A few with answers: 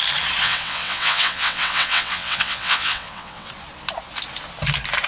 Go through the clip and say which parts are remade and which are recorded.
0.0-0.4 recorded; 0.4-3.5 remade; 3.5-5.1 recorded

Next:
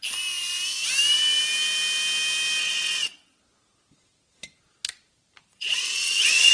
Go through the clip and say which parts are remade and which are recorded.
0.0-2.6 recorded; 2.6-3.4 remade; 3.4-5.5 recorded; 5.5-6.5 remade

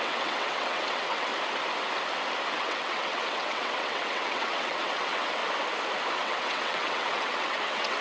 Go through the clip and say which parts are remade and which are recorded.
0.0-1.3 remade; 1.3-2.5 recorded; 2.5-5.4 remade; 5.4-6.1 recorded; 6.1-8.0 remade

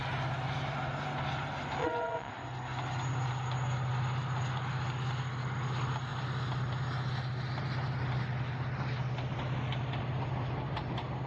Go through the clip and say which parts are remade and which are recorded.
0.0-1.8 recorded; 1.8-2.3 remade; 2.3-11.3 recorded